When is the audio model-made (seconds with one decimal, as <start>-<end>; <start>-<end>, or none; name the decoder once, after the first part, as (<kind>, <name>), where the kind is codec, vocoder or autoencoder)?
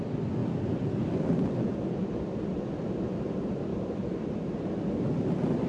none